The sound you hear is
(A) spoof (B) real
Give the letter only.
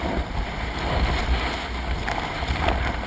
B